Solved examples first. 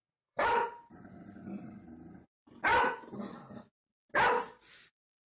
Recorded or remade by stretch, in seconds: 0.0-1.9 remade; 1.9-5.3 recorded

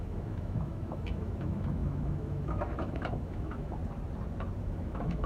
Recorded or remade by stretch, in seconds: 0.0-3.8 remade; 3.8-4.6 recorded; 4.6-5.3 remade

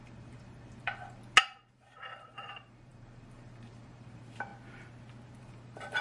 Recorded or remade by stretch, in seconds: 0.0-1.2 remade; 1.2-1.7 recorded; 1.7-4.5 remade; 4.5-5.4 recorded; 5.4-6.0 remade

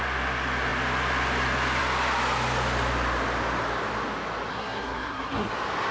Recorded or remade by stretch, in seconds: 0.0-4.5 recorded; 4.5-5.5 remade; 5.5-5.9 recorded

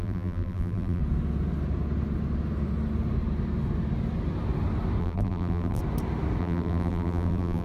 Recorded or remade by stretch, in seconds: 0.0-1.0 remade; 1.0-5.0 recorded; 5.0-5.8 remade; 5.8-6.4 recorded; 6.4-7.6 remade